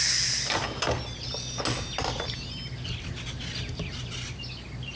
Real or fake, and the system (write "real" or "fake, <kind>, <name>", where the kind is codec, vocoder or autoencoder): real